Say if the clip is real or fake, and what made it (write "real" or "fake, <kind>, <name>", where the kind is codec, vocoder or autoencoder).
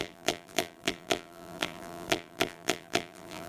fake, vocoder, BigVGAN v2